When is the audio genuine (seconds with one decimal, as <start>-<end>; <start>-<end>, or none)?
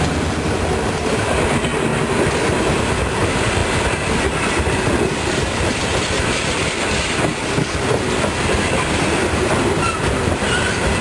0.0-11.0